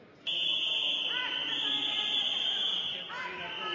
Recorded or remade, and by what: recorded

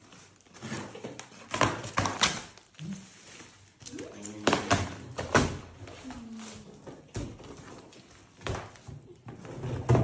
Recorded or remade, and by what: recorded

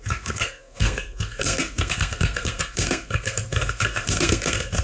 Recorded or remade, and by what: remade, codec, SNAC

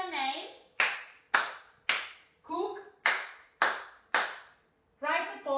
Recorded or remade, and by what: recorded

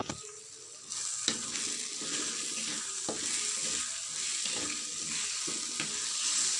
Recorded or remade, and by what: recorded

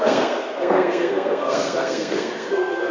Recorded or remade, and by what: remade, codec, SNAC